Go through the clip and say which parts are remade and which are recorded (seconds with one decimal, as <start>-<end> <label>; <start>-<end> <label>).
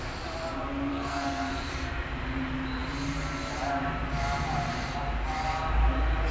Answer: 0.0-0.9 recorded; 0.9-1.7 remade; 1.7-6.3 recorded